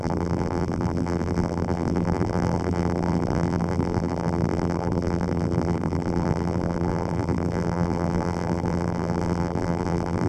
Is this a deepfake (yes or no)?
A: yes